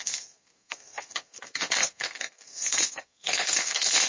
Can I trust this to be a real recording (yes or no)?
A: no